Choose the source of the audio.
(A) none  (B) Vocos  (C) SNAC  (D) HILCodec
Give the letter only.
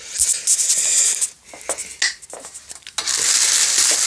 A